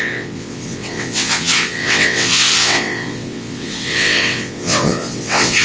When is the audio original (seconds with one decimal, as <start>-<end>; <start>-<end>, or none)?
none

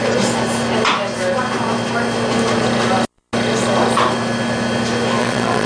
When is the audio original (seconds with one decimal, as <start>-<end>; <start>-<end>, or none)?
0.0-5.2